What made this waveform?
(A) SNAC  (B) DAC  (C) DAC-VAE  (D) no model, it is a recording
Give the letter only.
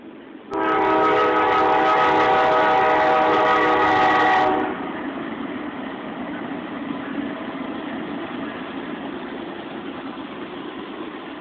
D